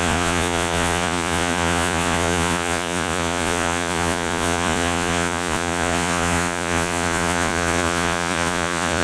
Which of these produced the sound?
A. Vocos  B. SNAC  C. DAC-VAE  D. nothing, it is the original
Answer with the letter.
A